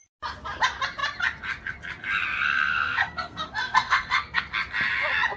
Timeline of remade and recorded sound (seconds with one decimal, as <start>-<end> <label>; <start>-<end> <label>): 0.0-2.4 recorded; 2.4-4.5 remade; 4.5-5.4 recorded